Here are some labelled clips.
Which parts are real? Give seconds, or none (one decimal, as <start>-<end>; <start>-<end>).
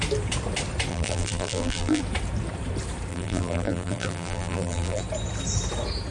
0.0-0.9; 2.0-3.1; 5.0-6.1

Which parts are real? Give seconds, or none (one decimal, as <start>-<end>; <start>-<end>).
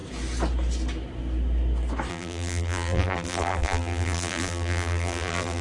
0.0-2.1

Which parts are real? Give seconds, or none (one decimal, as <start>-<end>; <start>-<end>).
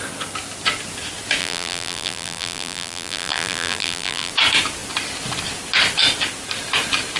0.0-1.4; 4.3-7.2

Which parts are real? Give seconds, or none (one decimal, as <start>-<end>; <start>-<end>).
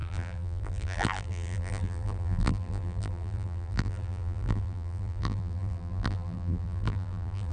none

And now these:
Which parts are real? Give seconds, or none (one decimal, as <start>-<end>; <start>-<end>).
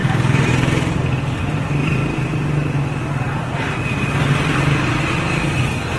1.0-6.0